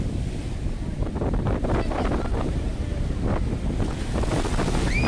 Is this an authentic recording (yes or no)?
yes